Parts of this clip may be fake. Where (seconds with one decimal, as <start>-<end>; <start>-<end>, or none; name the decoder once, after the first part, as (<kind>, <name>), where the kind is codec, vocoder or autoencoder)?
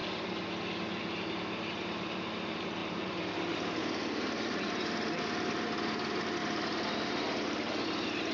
2.8-3.8 (vocoder, BigVGAN v2); 6.4-7.9